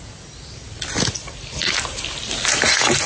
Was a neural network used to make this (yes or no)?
no